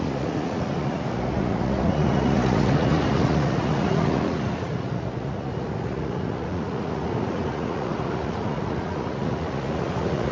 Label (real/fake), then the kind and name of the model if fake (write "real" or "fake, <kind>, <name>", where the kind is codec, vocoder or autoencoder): fake, vocoder, Vocos